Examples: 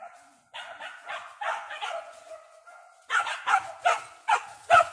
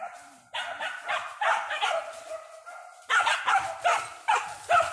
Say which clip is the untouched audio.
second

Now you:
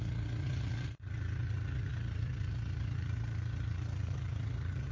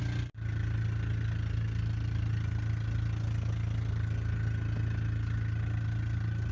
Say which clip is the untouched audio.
second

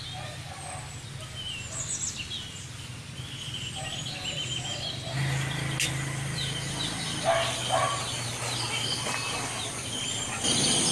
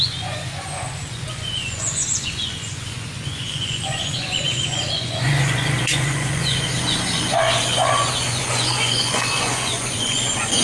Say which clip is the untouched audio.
first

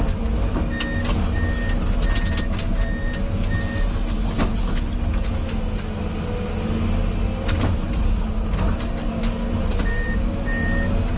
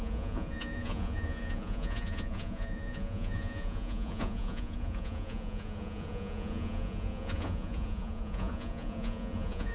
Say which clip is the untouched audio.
first